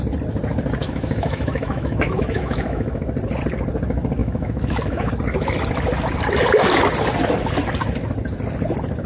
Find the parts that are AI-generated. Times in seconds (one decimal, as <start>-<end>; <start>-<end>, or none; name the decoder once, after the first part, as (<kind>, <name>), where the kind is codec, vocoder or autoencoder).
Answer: 0.8-3.0 (autoencoder, DAC-VAE); 4.2-5.1